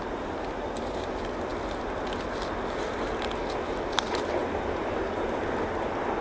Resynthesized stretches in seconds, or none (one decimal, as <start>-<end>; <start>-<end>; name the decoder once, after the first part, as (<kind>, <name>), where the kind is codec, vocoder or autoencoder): 4.4-5.4 (vocoder, BigVGAN v2)